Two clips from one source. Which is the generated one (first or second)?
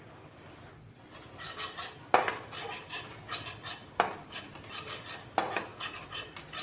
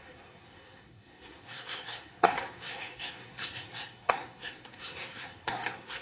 second